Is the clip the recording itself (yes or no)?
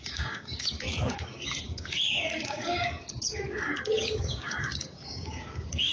no